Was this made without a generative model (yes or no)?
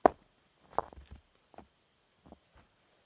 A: yes